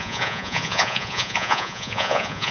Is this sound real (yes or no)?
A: no